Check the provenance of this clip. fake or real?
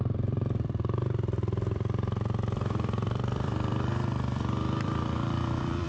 fake